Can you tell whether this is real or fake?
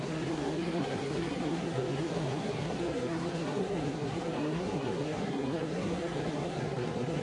fake